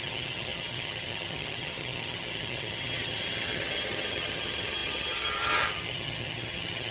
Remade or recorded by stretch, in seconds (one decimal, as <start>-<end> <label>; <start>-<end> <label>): 0.0-6.9 remade